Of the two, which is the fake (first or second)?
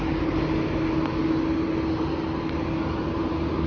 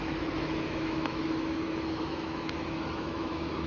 second